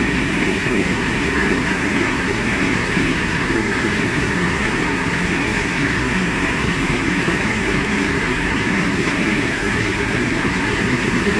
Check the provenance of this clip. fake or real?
fake